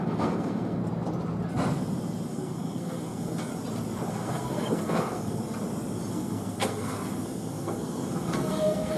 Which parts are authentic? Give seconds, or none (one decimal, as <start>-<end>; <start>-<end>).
0.8-2.3; 3.5-4.1; 5.4-6.1